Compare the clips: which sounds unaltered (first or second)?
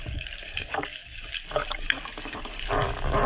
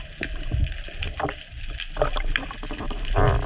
second